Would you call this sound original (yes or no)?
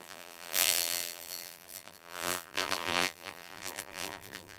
no